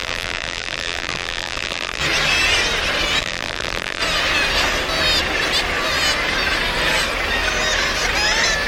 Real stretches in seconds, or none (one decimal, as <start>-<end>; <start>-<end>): 2.0-3.2; 4.0-8.7